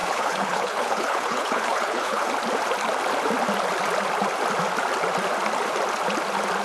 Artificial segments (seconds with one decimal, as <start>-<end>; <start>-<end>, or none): 0.0-2.3